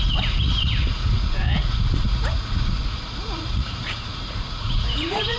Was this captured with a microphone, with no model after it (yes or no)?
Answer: no